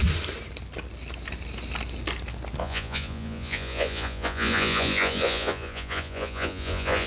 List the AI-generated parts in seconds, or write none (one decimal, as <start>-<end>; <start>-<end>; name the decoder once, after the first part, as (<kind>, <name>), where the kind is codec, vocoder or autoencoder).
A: 2.6-7.1 (vocoder, Vocos)